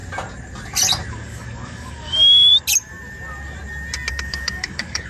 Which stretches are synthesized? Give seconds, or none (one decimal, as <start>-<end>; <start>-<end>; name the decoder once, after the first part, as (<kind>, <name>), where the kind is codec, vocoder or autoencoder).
1.1-2.5 (codec, DAC); 4.1-5.1